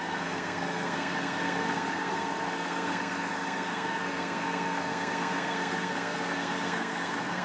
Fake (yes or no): yes